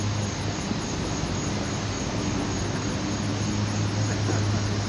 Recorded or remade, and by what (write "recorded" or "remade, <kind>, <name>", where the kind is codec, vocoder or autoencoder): recorded